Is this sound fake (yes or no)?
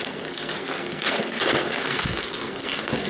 yes